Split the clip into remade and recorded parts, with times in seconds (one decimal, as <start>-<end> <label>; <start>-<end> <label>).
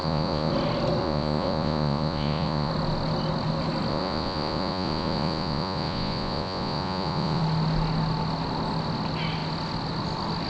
0.0-0.5 remade; 0.5-1.0 recorded; 1.0-2.7 remade; 2.7-3.9 recorded; 3.9-7.4 remade; 7.4-10.5 recorded